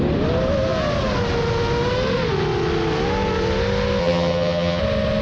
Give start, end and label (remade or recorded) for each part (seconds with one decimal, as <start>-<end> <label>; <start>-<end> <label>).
0.0-4.0 recorded; 4.0-4.8 remade; 4.8-5.2 recorded